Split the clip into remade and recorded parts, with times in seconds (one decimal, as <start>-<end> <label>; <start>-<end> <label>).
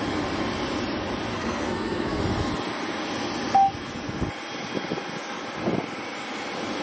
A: 0.0-1.3 recorded; 1.3-2.2 remade; 2.2-6.8 recorded